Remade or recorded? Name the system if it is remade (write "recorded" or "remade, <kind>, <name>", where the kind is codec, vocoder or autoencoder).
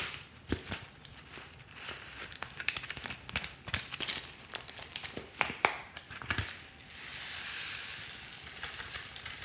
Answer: remade, vocoder, BigVGAN v2